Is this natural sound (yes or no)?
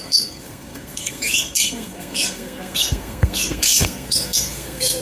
no